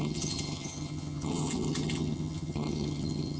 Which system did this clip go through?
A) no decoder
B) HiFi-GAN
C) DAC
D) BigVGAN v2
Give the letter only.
B